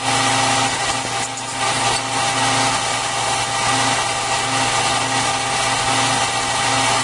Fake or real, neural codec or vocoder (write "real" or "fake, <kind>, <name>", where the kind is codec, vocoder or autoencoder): real